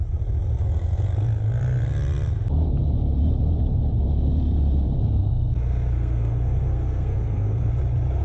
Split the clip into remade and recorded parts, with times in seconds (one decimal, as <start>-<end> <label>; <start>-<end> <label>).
0.0-5.2 recorded; 5.2-7.7 remade; 7.7-8.2 recorded